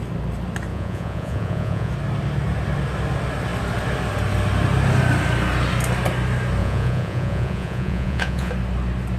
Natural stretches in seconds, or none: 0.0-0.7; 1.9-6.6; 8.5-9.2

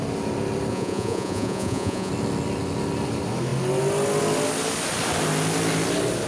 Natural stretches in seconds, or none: 0.0-0.7; 2.1-6.3

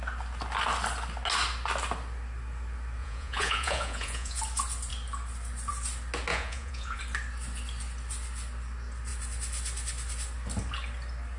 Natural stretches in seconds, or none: 0.0-3.0; 4.4-6.3; 7.0-11.4

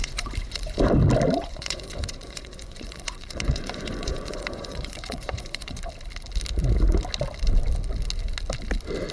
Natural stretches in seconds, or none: 0.8-1.4; 5.8-9.1

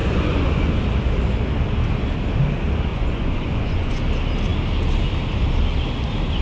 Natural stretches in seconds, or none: 0.7-2.9; 4.0-6.4